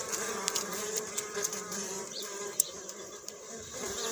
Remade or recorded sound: remade